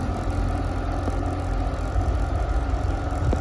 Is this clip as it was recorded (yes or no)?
yes